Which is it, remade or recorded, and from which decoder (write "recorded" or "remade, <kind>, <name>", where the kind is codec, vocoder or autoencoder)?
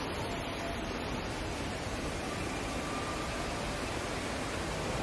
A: recorded